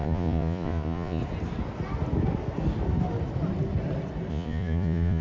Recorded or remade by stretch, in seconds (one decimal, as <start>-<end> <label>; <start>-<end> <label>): 0.0-1.2 remade; 1.2-4.3 recorded; 4.3-5.2 remade